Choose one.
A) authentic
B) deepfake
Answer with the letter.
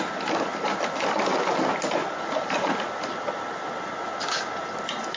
A